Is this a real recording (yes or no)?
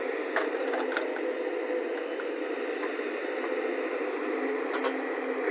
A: yes